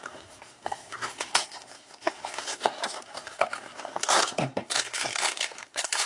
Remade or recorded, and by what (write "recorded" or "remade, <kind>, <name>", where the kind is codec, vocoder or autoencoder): remade, codec, SNAC